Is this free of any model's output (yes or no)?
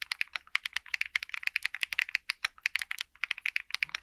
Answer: yes